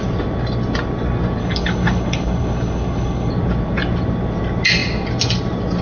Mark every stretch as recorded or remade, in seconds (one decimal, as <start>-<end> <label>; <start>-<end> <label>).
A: 0.0-1.4 recorded; 1.4-3.3 remade; 3.3-5.8 recorded